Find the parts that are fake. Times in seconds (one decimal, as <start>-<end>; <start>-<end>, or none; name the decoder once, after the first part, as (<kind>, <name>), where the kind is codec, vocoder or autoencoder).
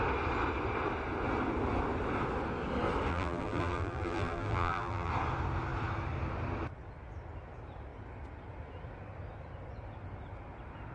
3.1-5.1 (vocoder, BigVGAN v2)